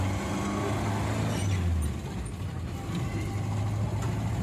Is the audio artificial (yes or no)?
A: no